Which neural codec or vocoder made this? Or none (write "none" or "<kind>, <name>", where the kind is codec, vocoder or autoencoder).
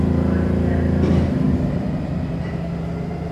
none